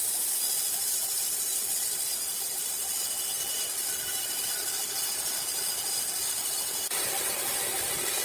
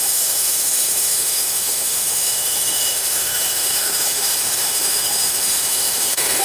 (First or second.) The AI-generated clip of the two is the second